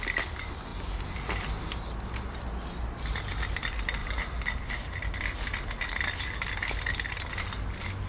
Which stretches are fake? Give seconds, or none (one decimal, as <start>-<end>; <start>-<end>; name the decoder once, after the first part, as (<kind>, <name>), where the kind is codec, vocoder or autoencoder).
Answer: none